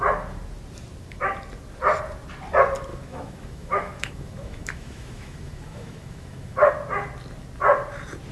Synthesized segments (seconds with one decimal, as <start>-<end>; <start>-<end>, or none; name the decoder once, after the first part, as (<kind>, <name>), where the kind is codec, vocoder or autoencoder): 2.9-6.7 (autoencoder, DAC-VAE)